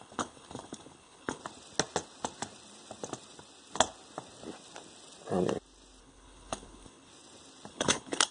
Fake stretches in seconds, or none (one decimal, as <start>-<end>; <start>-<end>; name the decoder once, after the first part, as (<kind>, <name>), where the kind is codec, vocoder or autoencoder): 0.0-1.4 (codec, HILCodec); 6.0-7.1; 7.7-8.3